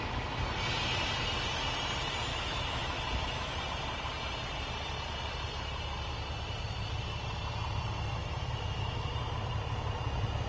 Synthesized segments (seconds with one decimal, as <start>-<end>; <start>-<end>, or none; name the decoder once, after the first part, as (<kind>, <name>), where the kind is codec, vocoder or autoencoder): 2.3-3.6 (autoencoder, DAC-VAE); 8.2-9.1